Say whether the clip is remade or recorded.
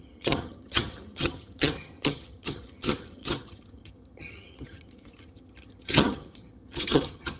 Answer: remade